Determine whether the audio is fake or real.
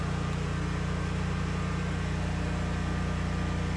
real